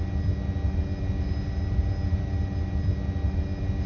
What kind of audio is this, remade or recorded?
recorded